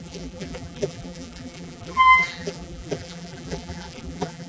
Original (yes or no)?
no